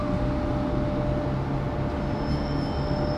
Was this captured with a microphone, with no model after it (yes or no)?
yes